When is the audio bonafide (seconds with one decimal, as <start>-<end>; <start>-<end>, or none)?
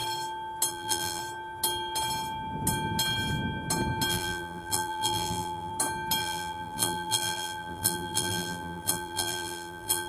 0.0-0.7; 1.2-4.1; 5.7-6.2